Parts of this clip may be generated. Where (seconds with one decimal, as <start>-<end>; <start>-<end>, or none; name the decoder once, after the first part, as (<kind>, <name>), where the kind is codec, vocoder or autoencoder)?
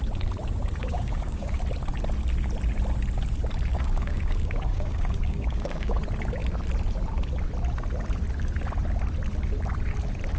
0.8-1.6 (codec, DAC); 3.7-6.0